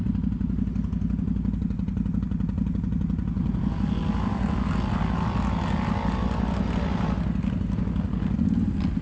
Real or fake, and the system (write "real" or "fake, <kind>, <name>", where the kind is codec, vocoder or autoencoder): real